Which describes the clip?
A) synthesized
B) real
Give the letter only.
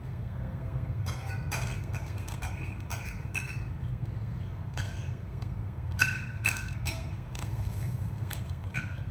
A